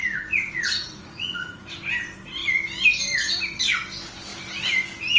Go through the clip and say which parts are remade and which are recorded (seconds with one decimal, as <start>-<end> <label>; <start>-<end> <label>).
0.0-1.6 remade; 1.6-5.2 recorded